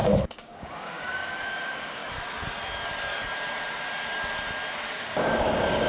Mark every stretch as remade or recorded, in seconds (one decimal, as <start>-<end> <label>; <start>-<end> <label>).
0.0-2.0 remade; 2.0-4.9 recorded; 4.9-5.9 remade